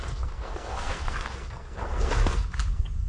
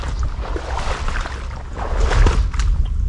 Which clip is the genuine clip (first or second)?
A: second